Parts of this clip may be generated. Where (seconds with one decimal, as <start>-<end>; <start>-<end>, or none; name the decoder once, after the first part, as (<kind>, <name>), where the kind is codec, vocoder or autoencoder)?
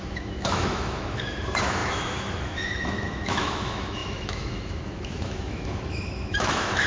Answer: 0.0-6.9 (autoencoder, DAC-VAE)